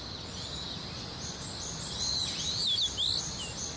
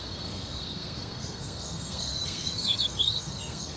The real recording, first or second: first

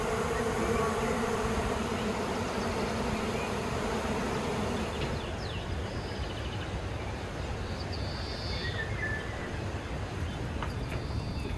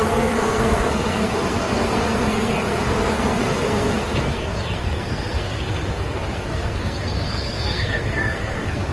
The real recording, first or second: first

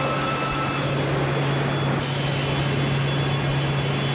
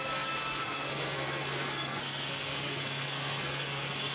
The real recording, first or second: first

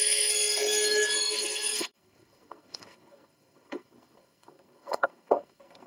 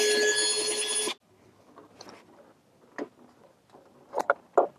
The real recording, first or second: second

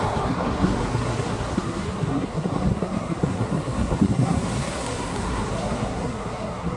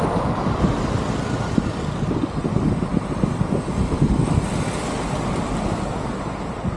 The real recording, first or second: second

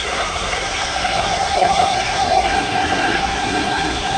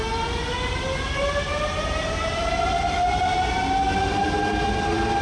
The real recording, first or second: second